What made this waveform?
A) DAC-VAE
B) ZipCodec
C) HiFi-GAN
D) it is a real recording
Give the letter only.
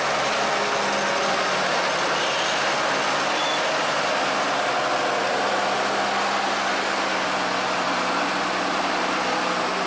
D